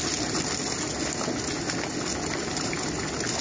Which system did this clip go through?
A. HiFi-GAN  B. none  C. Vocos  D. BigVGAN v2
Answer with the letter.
B